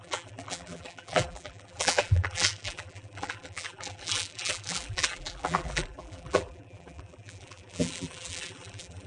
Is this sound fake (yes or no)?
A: yes